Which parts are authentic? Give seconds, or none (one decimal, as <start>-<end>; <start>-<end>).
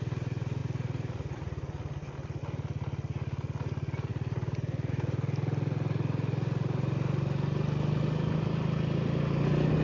0.0-0.6; 2.4-9.8